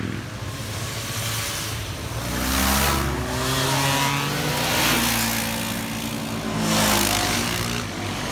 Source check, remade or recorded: recorded